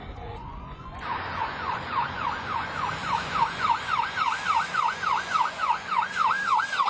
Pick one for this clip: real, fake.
fake